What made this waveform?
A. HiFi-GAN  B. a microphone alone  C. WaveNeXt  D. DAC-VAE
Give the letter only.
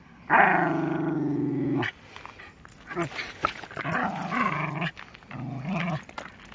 B